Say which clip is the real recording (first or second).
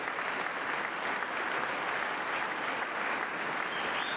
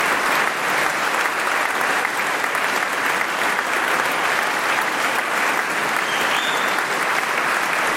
first